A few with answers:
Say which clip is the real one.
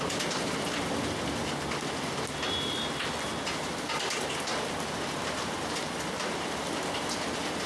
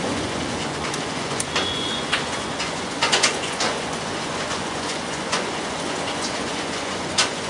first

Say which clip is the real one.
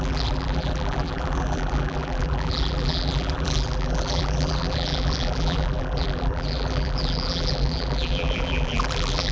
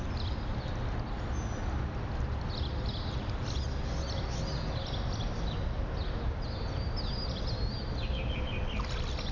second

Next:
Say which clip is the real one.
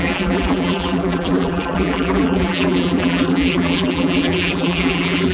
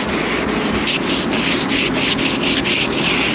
second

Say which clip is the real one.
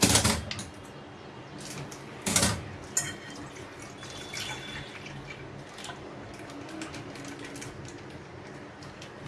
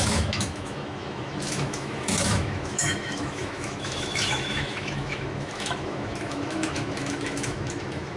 first